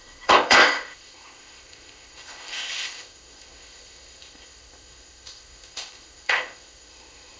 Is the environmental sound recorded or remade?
remade